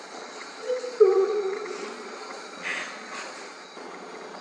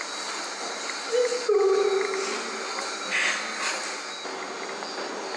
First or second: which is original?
second